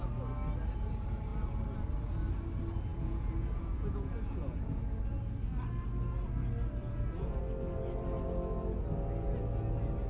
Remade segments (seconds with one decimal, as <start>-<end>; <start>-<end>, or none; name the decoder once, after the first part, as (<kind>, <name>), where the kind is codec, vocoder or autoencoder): 2.9-4.8 (vocoder, Vocos); 6.8-7.4